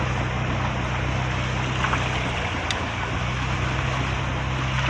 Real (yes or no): yes